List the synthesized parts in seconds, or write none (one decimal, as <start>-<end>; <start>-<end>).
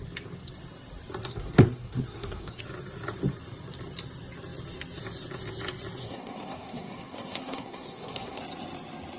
1.3-2.6; 6.0-8.4